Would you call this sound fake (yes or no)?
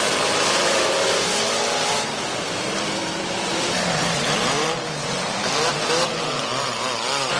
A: yes